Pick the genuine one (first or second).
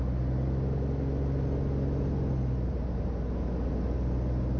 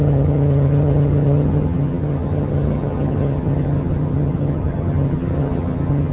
first